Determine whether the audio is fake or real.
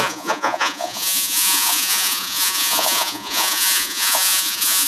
fake